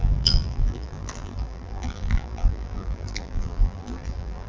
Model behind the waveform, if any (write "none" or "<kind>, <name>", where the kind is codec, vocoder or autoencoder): vocoder, BigVGAN v2